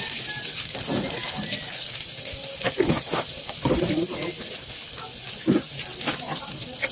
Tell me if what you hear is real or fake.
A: real